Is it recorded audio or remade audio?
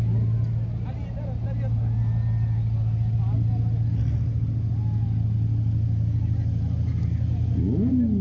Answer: recorded